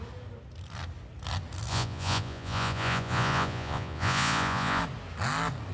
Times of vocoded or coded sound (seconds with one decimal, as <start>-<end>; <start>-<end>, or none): 1.7-4.8